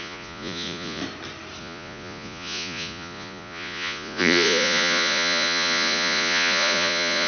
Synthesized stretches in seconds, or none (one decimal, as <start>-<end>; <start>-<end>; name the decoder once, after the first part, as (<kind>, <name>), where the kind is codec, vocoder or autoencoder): 0.0-1.0 (vocoder, Vocos); 1.6-7.3

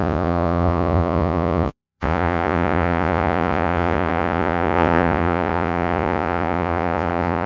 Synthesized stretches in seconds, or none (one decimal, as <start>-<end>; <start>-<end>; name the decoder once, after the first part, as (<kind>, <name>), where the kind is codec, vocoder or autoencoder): 0.0-7.5 (vocoder, Vocos)

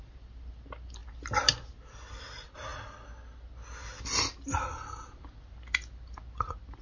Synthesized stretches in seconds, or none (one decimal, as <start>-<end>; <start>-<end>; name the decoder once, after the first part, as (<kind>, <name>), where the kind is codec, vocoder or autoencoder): none

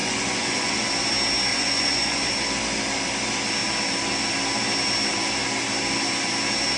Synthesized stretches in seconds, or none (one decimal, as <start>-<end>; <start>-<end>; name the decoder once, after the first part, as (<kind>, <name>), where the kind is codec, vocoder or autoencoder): 0.0-0.8 (vocoder, Vocos); 1.5-2.3

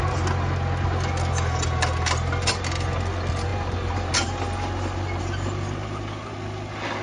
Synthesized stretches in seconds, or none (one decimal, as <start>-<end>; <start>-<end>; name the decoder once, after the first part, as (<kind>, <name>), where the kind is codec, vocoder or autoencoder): none

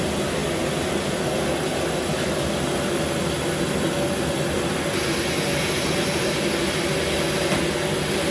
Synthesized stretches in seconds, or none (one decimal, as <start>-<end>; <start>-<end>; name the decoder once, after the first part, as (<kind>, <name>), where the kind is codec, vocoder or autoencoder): none

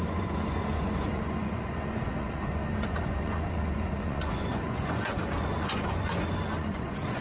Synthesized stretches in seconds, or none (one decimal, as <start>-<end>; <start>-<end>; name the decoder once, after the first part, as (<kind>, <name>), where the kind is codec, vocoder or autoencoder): 0.0-7.2 (vocoder, Vocos)

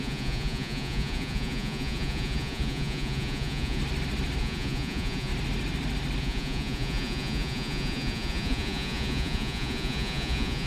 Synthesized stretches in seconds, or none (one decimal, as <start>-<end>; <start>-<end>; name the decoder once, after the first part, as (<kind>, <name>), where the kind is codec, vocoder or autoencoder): 0.0-3.8 (vocoder, Vocos); 4.4-5.3; 6.2-10.7